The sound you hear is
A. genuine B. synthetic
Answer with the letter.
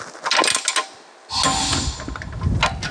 A